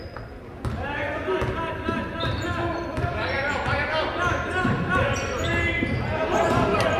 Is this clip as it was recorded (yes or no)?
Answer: yes